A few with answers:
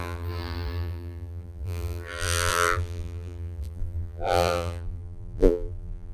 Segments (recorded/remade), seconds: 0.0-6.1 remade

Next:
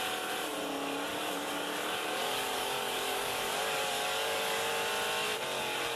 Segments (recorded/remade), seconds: 0.0-1.1 recorded; 1.1-4.7 remade; 4.7-6.0 recorded

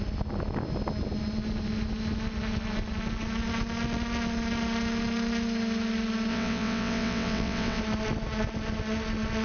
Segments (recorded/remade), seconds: 0.0-6.3 recorded; 6.3-7.8 remade; 7.8-9.4 recorded

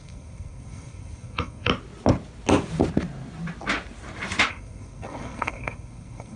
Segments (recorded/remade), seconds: 0.0-1.7 remade; 1.7-4.5 recorded; 4.5-6.4 remade

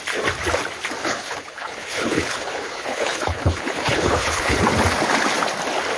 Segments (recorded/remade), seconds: 0.0-1.0 recorded; 1.0-4.6 remade; 4.6-6.0 recorded

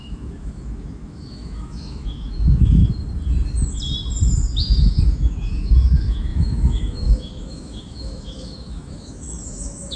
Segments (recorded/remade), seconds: 0.0-2.8 remade; 2.8-4.6 recorded; 4.6-10.0 remade